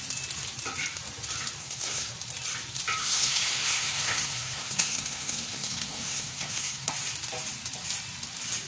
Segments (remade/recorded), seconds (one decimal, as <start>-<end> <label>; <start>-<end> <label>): 0.0-1.6 recorded; 1.6-2.1 remade; 2.1-3.0 recorded; 3.0-6.9 remade; 6.9-8.7 recorded